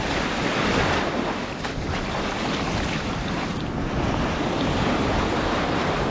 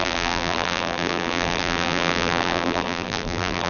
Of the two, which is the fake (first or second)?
second